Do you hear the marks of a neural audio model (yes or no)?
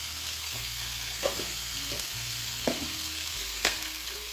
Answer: yes